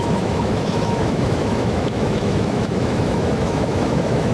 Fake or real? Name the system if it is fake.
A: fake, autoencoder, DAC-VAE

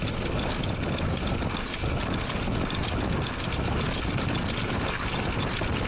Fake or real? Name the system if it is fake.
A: real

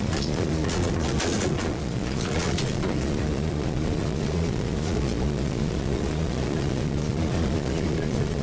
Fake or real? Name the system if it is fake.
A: fake, vocoder, Vocos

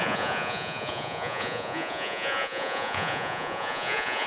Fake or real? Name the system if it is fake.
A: fake, vocoder, Vocos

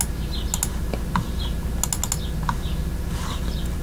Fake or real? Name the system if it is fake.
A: real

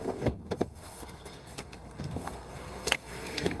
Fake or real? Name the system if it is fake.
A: fake, codec, SNAC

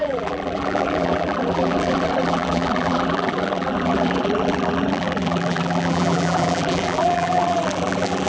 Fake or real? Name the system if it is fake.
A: fake, vocoder, BigVGAN v2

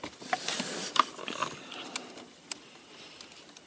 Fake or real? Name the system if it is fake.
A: real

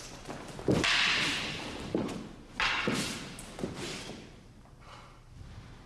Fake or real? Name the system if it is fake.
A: real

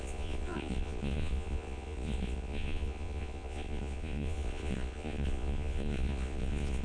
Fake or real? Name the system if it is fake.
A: fake, vocoder, Vocos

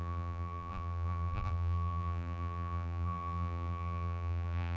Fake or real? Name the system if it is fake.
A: fake, vocoder, BigVGAN v2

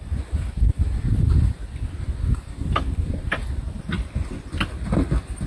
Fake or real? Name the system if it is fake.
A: real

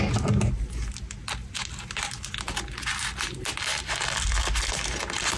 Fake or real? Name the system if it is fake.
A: real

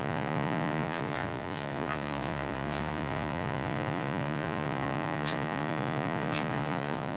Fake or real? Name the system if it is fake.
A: fake, vocoder, Vocos